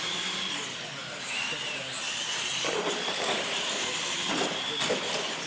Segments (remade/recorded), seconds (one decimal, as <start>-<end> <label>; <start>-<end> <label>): 0.0-5.5 recorded